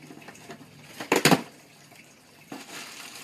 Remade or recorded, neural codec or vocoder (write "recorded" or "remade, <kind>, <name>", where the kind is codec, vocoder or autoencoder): recorded